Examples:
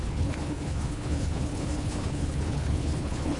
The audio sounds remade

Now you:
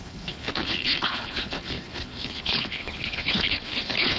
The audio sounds remade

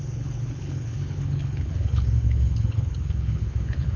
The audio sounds remade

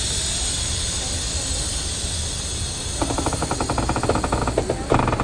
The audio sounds recorded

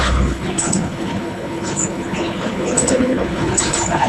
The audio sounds remade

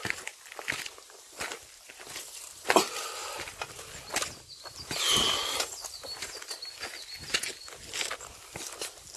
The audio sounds recorded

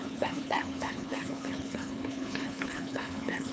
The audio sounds remade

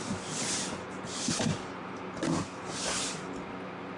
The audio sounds recorded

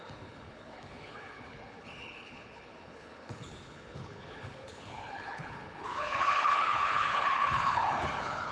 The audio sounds remade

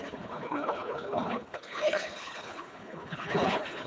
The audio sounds remade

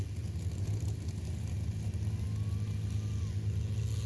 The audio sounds recorded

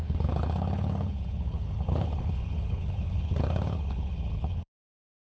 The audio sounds remade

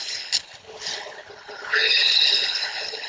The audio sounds remade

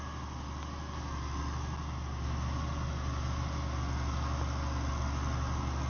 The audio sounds recorded